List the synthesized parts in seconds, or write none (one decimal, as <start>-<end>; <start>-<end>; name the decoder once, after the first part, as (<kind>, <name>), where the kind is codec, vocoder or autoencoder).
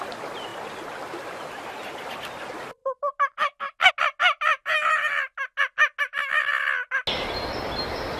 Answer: 4.5-5.1 (vocoder, BigVGAN v2)